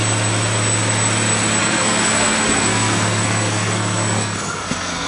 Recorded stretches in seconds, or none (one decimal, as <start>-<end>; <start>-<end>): 0.0-1.6